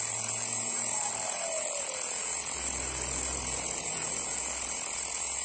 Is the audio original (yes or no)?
yes